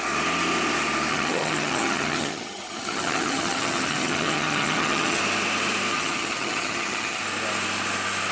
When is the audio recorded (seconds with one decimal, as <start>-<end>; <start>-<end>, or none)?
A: 0.0-1.1; 5.2-5.9; 7.2-8.3